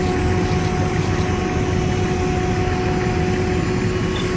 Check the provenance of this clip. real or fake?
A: real